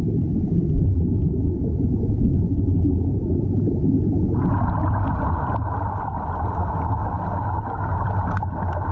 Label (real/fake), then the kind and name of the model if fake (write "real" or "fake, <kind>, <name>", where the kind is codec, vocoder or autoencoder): real